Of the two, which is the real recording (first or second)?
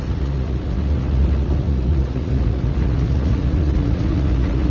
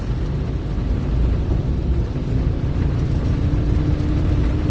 second